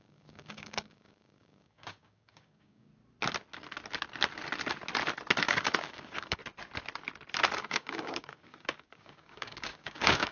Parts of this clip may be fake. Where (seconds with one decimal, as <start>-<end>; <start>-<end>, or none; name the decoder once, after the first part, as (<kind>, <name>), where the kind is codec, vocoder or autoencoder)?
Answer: 0.0-2.9 (codec, DAC); 5.4-6.4; 7.6-10.3